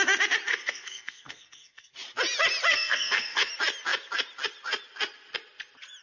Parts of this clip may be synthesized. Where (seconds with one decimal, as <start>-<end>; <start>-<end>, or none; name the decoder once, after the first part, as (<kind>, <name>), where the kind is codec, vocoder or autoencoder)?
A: 0.5-1.9 (codec, SNAC); 2.7-3.5